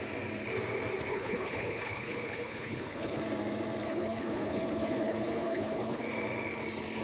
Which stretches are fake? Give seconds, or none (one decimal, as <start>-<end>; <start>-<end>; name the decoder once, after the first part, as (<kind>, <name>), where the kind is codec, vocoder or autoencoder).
1.1-3.2 (codec, HILCodec); 3.8-6.0